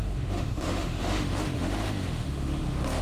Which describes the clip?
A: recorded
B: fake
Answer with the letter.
B